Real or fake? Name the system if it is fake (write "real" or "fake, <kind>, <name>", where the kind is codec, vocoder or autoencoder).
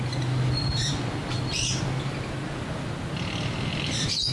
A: real